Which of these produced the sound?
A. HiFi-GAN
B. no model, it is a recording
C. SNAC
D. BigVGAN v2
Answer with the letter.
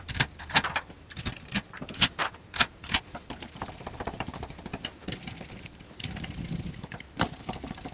D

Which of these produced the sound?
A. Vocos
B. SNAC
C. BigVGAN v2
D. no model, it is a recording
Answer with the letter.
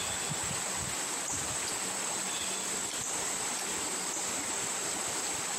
D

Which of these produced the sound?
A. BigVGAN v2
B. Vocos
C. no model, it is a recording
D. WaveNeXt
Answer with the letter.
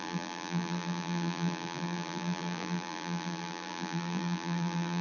A